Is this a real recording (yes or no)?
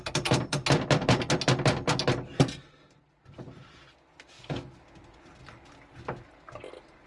yes